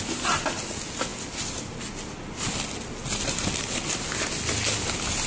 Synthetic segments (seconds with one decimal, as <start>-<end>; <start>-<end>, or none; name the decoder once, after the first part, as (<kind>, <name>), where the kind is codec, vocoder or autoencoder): none